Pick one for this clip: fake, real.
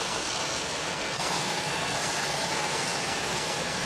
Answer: fake